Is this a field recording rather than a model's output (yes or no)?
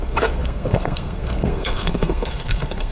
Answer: no